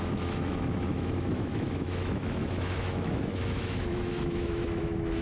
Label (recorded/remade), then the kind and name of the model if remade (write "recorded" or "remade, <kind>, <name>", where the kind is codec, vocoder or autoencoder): remade, autoencoder, DAC-VAE